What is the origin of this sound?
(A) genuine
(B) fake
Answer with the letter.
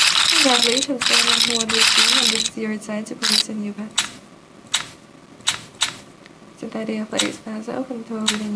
A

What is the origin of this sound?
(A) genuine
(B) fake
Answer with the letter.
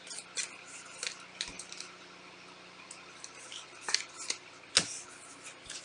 A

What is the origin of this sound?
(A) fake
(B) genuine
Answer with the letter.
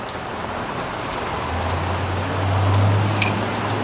B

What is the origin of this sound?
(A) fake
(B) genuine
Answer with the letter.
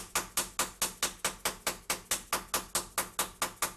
B